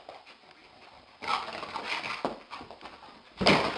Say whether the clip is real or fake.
real